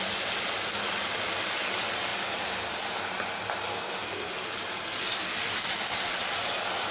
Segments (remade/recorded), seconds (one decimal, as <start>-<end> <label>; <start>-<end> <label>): 0.0-3.7 recorded; 3.7-4.3 remade; 4.3-6.9 recorded